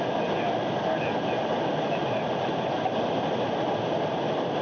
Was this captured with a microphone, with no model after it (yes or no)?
yes